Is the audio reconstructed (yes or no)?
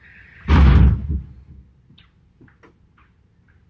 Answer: no